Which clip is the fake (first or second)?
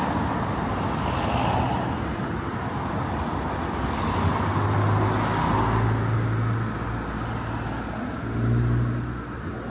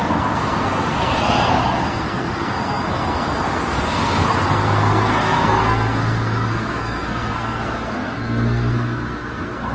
second